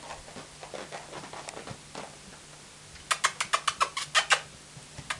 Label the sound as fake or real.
real